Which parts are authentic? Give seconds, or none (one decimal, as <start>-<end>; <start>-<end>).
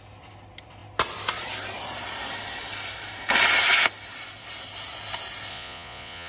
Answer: 0.0-5.5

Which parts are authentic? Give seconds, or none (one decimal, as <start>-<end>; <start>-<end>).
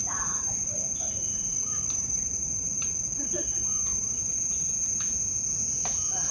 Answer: 3.0-6.3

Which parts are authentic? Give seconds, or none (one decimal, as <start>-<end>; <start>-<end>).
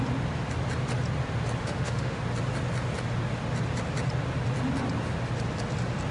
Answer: 0.0-1.6; 2.2-6.1